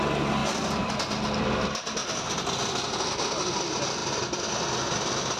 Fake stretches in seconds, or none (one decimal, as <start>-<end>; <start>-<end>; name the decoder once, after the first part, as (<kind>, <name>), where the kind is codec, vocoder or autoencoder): 0.4-0.9 (vocoder, BigVGAN v2); 4.0-4.5